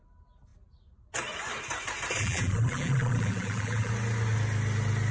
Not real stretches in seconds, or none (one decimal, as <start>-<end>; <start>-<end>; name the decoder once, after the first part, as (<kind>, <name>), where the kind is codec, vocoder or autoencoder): 2.2-3.9 (vocoder, BigVGAN v2)